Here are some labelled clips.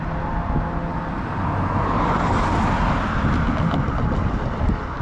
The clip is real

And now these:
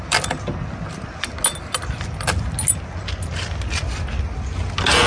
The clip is real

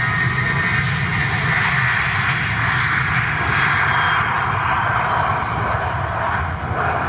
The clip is real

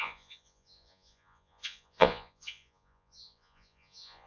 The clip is fake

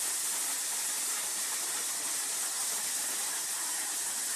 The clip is real